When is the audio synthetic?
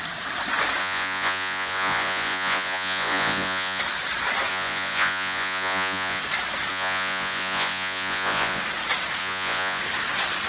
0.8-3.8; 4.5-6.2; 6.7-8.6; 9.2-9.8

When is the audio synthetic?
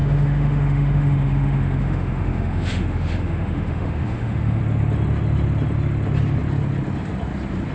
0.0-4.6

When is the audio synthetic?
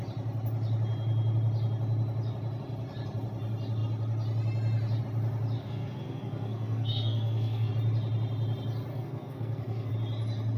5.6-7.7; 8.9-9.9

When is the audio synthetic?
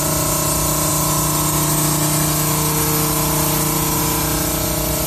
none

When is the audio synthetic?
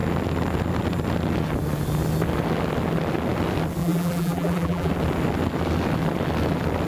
3.8-4.9